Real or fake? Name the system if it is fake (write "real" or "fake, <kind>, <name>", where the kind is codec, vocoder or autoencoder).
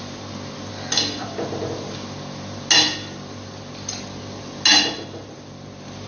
real